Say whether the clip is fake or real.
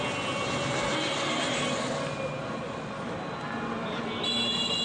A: real